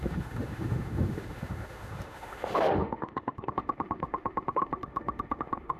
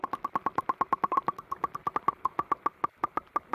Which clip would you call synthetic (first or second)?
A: first